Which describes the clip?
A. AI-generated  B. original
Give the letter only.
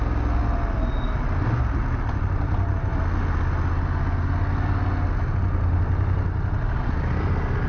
B